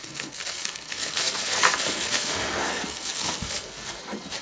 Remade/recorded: remade